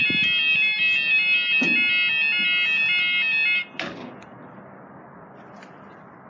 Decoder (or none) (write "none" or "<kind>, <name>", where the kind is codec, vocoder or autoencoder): none